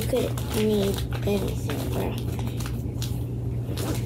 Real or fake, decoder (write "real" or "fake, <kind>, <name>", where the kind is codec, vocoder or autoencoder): real